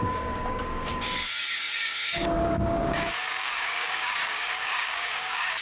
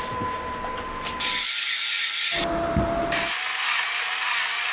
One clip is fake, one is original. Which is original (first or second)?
second